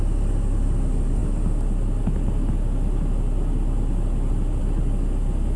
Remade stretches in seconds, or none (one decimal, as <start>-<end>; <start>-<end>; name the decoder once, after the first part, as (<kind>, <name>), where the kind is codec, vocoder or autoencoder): none